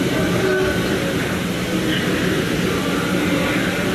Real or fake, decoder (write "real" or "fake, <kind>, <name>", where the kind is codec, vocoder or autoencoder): real